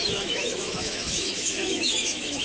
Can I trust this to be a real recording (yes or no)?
no